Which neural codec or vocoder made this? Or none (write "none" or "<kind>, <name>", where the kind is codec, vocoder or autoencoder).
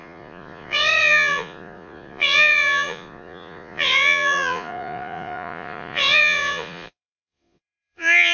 vocoder, Vocos